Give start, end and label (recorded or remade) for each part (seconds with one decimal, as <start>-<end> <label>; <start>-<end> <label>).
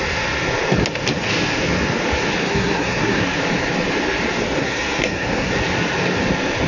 0.0-2.4 recorded; 2.4-3.2 remade; 3.2-4.6 recorded; 4.6-5.5 remade; 5.5-6.7 recorded